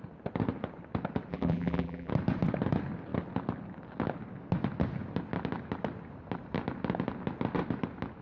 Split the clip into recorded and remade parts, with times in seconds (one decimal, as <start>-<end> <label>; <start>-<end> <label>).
0.0-1.3 recorded; 1.3-2.1 remade; 2.1-8.2 recorded